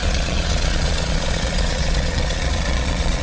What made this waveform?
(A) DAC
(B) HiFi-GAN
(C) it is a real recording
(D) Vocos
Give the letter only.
D